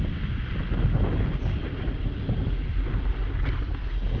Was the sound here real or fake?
real